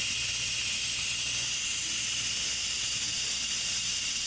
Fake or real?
real